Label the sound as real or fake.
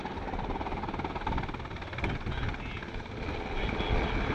real